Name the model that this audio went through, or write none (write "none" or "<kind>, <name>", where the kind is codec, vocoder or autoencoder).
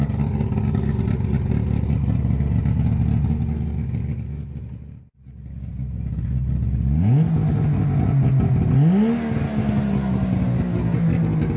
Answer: none